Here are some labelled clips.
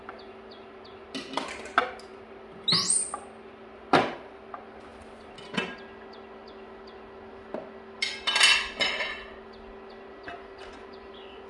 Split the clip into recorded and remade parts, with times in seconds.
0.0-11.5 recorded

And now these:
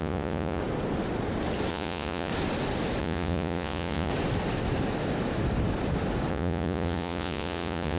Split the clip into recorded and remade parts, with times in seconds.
0.0-0.6 remade; 0.6-1.7 recorded; 1.7-2.3 remade; 2.3-3.0 recorded; 3.0-4.1 remade; 4.1-6.3 recorded; 6.3-8.0 remade

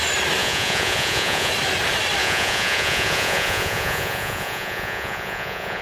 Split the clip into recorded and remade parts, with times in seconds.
0.0-0.4 recorded; 0.4-1.5 remade; 1.5-2.2 recorded; 2.2-5.8 remade

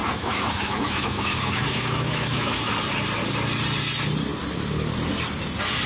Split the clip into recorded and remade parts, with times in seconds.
0.0-2.7 remade; 2.7-5.9 recorded

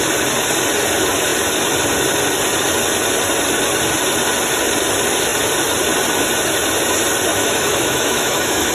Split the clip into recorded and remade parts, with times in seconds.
0.0-7.3 recorded; 7.3-8.7 remade

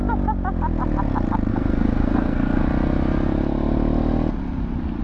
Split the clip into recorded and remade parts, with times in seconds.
0.0-1.5 recorded; 1.5-2.6 remade; 2.6-5.0 recorded